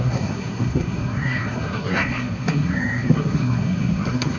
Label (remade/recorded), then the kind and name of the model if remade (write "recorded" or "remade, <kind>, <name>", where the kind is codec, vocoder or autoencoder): remade, codec, SNAC